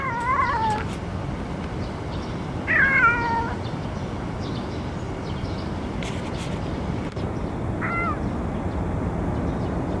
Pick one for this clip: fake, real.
real